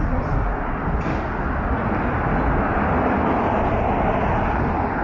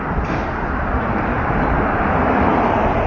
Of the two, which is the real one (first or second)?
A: first